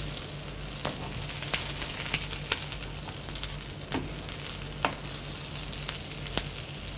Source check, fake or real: real